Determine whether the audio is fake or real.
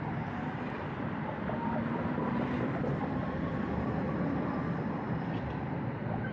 fake